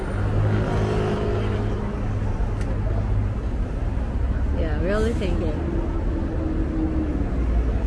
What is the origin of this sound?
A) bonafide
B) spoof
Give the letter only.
A